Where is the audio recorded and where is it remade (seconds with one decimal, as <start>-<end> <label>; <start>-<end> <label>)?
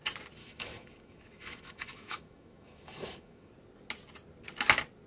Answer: 0.0-0.4 recorded; 0.4-3.5 remade; 3.5-5.1 recorded